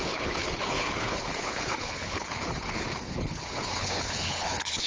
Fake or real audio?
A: fake